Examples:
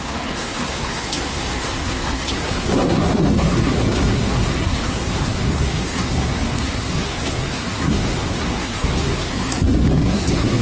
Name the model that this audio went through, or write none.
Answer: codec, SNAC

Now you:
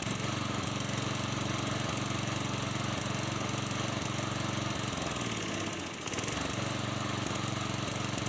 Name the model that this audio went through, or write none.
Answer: none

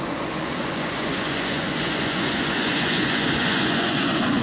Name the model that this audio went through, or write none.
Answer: vocoder, Vocos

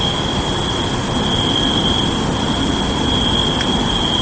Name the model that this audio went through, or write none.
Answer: none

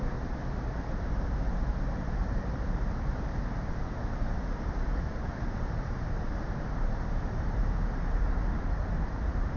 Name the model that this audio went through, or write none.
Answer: vocoder, BigVGAN v2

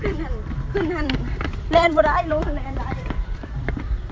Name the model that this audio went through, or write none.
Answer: vocoder, BigVGAN v2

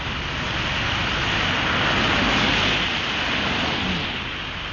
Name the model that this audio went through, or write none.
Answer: none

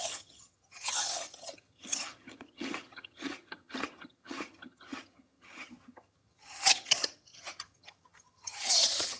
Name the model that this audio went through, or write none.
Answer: vocoder, HiFi-GAN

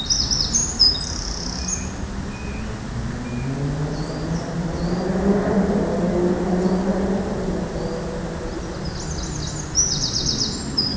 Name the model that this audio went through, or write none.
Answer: none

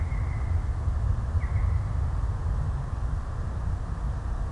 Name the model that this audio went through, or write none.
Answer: none